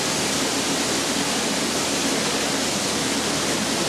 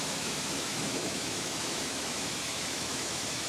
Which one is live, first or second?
first